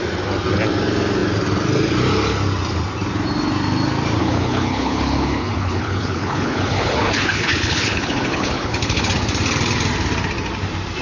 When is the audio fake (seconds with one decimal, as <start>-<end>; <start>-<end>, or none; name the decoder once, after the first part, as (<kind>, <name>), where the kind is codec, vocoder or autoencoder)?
4.2-9.1 (codec, HILCodec)